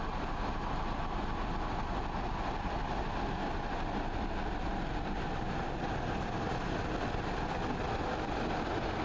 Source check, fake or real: real